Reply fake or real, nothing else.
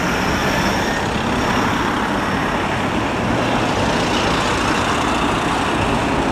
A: real